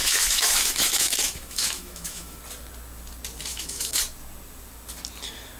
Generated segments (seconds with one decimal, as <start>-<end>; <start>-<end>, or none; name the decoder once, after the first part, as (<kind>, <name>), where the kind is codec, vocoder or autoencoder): 0.0-2.4 (autoencoder, DAC-VAE); 3.5-4.0